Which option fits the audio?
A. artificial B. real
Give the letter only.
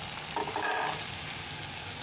B